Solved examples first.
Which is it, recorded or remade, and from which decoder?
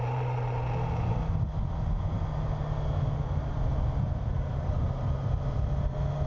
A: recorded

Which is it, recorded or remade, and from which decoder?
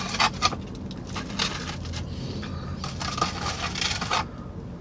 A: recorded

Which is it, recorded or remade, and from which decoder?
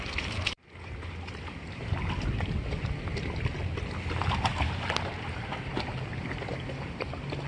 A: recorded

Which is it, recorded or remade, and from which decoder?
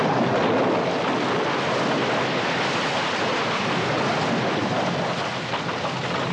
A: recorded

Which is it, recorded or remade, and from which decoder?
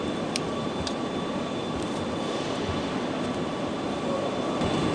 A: recorded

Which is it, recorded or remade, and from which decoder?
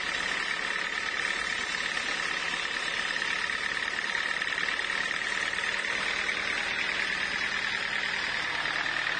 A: recorded